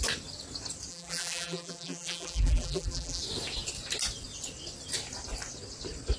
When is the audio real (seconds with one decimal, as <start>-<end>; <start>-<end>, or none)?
0.0-0.9; 3.2-6.2